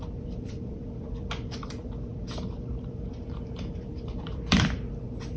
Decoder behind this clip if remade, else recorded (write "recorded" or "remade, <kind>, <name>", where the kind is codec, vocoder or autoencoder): remade, vocoder, BigVGAN v2